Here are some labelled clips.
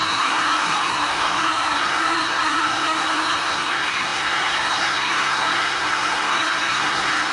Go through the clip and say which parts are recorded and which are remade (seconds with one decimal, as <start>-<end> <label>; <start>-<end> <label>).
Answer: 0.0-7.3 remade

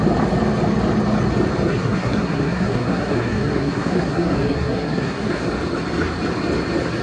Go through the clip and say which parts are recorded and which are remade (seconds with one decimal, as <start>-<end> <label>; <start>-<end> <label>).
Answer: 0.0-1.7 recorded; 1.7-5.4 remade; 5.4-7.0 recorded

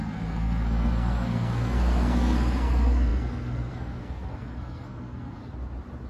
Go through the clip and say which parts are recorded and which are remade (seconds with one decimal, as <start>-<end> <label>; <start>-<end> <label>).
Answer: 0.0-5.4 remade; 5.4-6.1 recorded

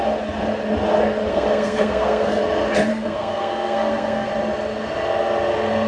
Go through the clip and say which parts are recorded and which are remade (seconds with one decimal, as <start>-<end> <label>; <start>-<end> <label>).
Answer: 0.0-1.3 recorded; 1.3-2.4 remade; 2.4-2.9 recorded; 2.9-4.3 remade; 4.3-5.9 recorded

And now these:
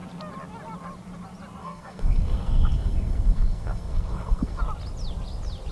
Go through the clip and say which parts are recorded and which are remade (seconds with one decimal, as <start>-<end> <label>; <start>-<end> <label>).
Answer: 0.0-1.6 recorded; 1.6-4.6 remade; 4.6-5.7 recorded

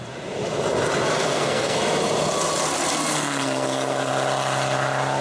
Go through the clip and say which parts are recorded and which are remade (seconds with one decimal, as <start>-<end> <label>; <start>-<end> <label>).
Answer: 0.0-1.2 recorded; 1.2-1.8 remade; 1.8-3.1 recorded; 3.1-4.1 remade; 4.1-5.2 recorded

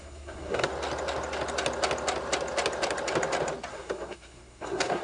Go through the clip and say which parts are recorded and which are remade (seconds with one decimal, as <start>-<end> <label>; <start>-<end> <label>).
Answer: 0.0-0.7 remade; 0.7-3.7 recorded; 3.7-5.0 remade

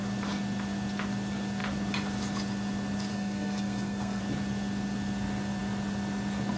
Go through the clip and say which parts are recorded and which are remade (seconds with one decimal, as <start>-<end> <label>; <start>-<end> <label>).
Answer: 0.0-3.1 recorded; 3.1-4.2 remade; 4.2-6.6 recorded